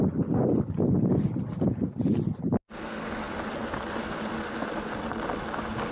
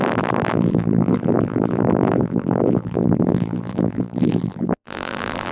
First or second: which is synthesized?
second